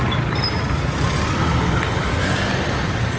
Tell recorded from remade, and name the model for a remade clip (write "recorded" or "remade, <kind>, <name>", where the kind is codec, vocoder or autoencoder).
recorded